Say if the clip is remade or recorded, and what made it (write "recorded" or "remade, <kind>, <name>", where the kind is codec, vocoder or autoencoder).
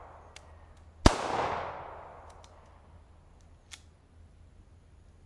recorded